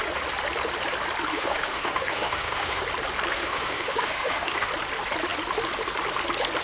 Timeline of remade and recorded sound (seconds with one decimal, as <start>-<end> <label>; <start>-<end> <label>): 0.0-1.3 recorded; 1.3-2.8 remade; 2.8-3.3 recorded; 3.3-4.7 remade; 4.7-6.6 recorded